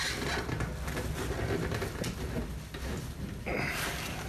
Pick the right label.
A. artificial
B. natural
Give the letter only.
B